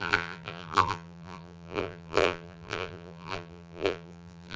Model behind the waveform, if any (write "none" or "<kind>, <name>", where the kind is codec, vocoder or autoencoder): vocoder, BigVGAN v2